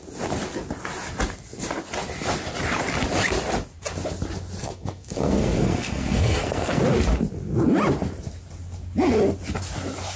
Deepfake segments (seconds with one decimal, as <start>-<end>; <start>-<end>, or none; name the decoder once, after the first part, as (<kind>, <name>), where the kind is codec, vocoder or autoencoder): 4.6-6.8 (codec, SNAC)